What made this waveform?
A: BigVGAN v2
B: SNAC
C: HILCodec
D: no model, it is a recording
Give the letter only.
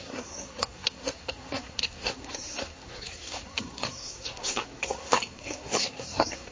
B